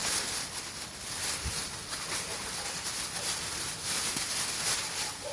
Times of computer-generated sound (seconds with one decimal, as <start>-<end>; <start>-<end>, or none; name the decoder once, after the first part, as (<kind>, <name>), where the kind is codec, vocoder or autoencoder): none